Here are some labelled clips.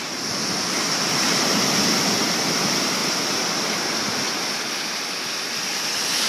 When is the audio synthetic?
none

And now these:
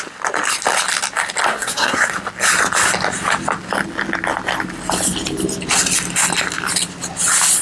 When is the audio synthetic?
1.5-2.1 (codec, SNAC)

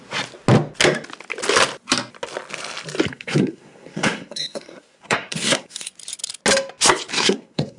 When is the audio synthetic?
3.1-5.9 (codec, SNAC); 7.1-7.8

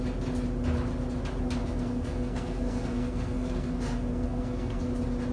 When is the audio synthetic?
1.6-4.8 (codec, SNAC)

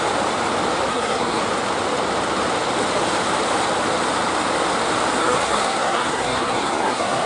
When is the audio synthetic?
0.9-1.4 (codec, SNAC); 5.2-7.3